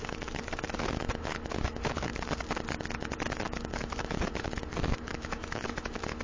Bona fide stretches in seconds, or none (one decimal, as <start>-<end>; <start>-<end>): 2.1-3.3